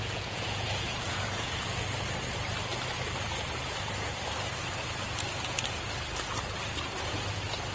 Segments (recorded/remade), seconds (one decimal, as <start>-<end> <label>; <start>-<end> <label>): 0.0-1.5 remade; 1.5-7.7 recorded